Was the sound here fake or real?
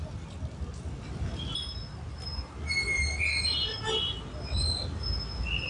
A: real